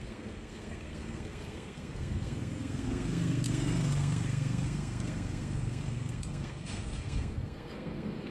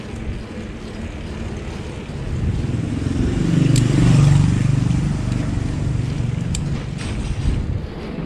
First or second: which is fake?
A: first